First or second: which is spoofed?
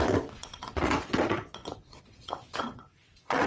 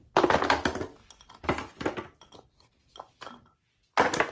first